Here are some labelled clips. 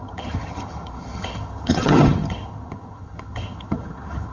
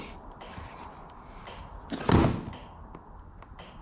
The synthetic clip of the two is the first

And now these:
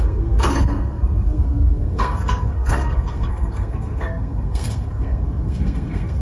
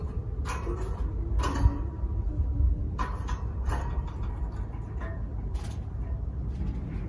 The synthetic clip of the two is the first